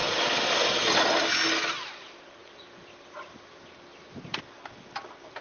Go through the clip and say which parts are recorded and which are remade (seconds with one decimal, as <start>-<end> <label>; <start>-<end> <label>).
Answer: 0.0-5.4 recorded